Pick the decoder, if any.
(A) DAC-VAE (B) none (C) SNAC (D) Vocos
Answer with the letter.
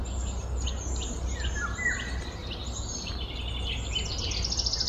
B